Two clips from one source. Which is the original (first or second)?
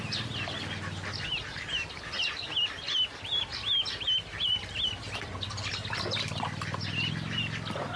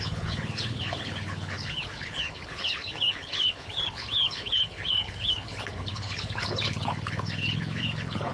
first